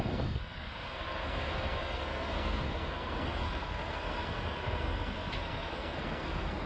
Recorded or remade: remade